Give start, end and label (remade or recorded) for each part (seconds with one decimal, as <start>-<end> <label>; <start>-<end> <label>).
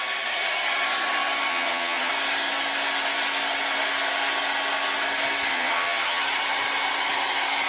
0.0-1.5 recorded; 1.5-2.1 remade; 2.1-5.5 recorded; 5.5-6.2 remade; 6.2-7.7 recorded